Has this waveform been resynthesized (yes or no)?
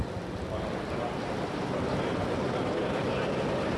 no